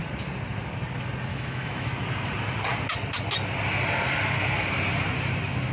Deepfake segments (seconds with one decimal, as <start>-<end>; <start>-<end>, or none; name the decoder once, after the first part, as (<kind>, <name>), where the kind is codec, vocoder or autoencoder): 1.3-1.9 (autoencoder, DAC-VAE)